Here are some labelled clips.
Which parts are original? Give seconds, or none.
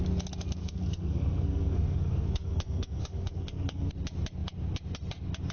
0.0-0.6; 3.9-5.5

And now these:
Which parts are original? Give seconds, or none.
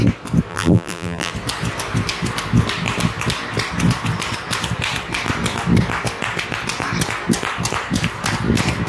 0.0-0.5; 1.3-8.9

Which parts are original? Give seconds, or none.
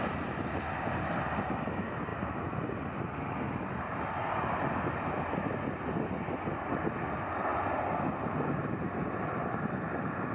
0.0-10.3